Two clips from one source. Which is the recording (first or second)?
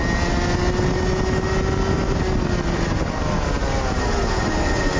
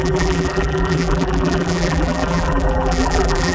first